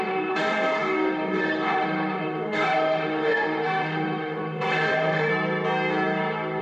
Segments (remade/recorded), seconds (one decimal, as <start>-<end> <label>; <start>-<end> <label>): 0.0-5.3 remade; 5.3-6.6 recorded